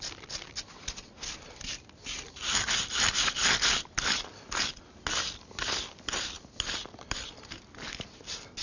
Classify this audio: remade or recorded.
recorded